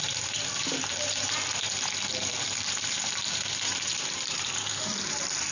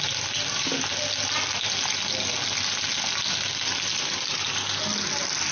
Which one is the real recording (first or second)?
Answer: second